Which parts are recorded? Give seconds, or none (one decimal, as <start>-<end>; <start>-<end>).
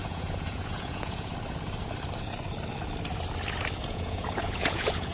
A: 1.3-3.8